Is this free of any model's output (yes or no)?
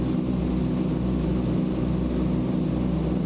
yes